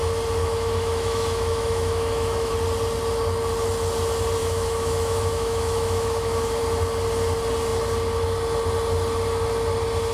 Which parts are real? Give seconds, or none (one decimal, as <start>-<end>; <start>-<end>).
0.0-0.4; 2.5-4.4; 6.6-10.1